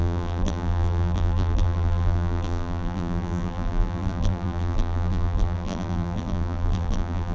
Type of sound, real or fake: fake